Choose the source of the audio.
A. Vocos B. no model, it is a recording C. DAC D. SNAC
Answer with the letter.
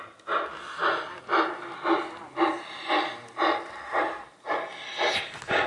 B